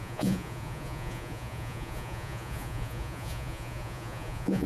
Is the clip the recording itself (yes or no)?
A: no